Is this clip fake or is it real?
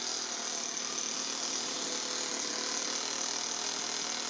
real